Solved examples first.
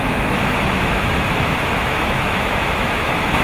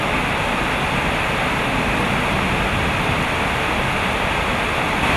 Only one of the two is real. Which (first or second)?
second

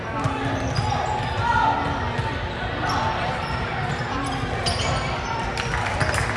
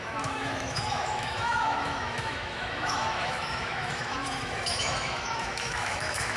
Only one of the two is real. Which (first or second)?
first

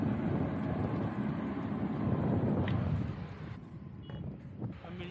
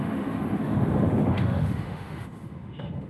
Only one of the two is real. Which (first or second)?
first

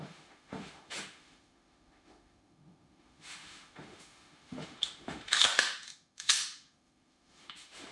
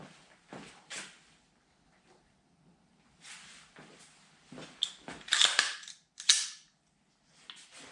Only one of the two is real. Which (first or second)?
second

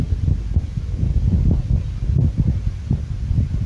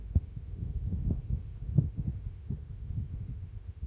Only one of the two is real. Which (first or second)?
first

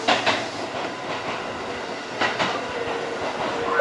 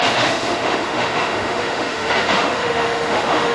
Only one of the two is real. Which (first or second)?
first